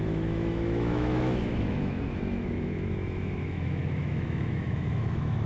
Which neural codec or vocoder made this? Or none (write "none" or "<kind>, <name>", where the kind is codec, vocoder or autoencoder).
autoencoder, DAC-VAE